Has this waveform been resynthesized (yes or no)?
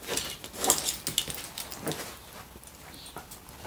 no